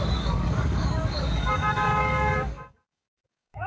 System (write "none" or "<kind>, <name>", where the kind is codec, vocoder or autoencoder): codec, DAC